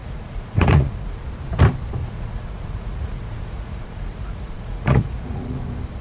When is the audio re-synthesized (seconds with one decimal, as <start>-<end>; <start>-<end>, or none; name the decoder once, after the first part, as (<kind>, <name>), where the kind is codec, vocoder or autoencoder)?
0.0-1.2 (vocoder, Vocos); 2.0-5.6